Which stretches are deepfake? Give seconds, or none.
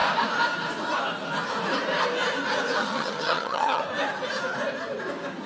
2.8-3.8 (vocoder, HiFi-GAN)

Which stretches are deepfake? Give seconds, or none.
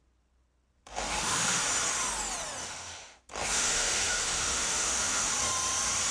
0.9-1.6 (autoencoder, DAC-VAE); 2.6-5.3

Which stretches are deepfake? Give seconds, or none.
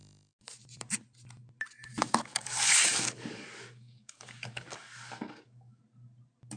1.9-5.8 (codec, DAC)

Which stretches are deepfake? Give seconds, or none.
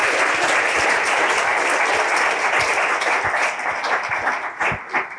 none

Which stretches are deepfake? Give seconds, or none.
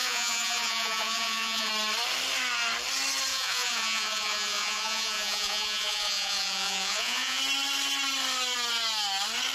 0.0-1.7 (vocoder, Vocos); 3.3-7.4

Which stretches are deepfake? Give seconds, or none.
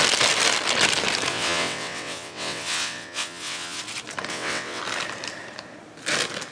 1.3-3.8 (vocoder, WaveNeXt); 4.3-4.8